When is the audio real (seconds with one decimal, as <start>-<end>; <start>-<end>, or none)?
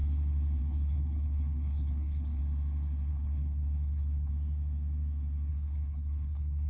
0.0-0.6; 2.4-3.1; 4.3-5.5